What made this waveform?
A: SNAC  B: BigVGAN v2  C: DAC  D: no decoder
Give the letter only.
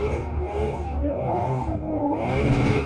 C